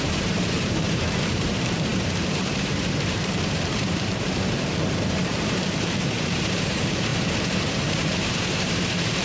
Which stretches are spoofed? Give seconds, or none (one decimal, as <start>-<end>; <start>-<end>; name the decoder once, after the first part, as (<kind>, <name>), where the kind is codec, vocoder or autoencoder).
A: 0.0-9.2 (vocoder, BigVGAN v2)